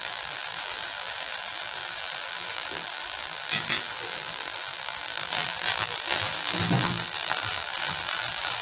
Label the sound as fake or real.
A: fake